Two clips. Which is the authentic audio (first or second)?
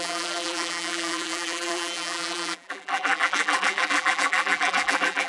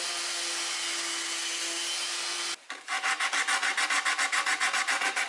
second